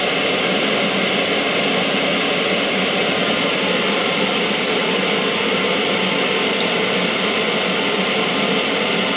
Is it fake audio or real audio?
real